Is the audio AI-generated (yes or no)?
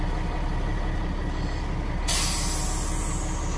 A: no